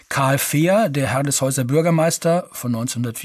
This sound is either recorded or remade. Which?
recorded